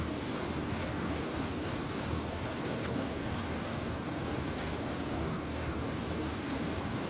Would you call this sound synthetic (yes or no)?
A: yes